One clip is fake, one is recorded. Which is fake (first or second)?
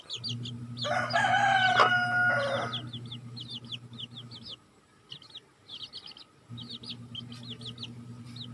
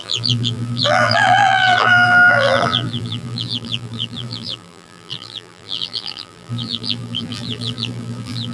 second